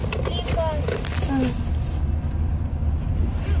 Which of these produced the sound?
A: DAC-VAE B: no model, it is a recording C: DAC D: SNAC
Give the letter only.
B